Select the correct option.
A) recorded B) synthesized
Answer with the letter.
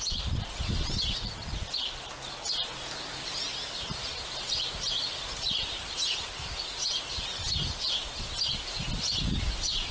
A